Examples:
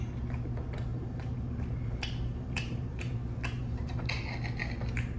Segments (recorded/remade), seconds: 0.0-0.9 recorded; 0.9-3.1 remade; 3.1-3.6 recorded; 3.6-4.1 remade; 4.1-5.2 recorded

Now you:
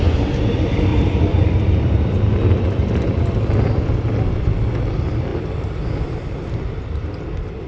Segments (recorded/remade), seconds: 0.0-0.9 recorded; 0.9-4.2 remade; 4.2-7.7 recorded

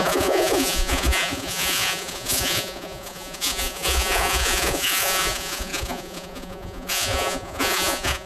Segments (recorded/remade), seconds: 0.0-8.3 remade

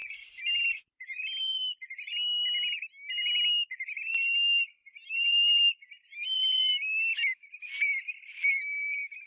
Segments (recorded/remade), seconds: 0.0-1.6 remade; 1.6-4.1 recorded; 4.1-6.7 remade; 6.7-9.3 recorded

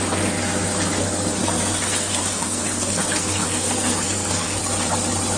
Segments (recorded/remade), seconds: 0.0-1.4 recorded; 1.4-4.6 remade; 4.6-5.4 recorded

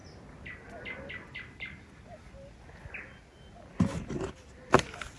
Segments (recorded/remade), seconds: 0.0-5.2 recorded

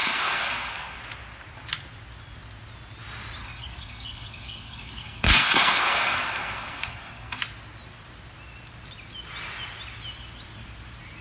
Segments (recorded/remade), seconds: 0.0-1.0 remade; 1.0-3.4 recorded; 3.4-7.4 remade; 7.4-11.2 recorded

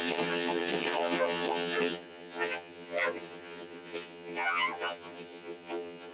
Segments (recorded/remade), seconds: 0.0-6.1 remade